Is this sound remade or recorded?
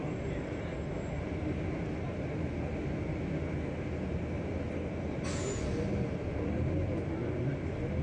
recorded